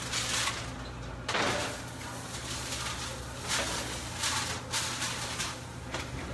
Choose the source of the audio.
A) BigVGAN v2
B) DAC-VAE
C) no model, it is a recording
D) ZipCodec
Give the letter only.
C